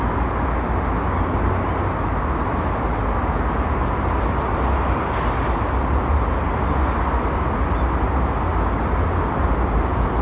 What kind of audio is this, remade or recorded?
recorded